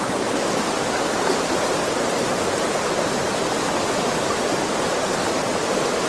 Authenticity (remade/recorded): recorded